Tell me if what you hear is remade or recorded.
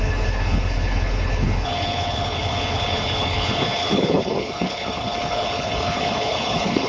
remade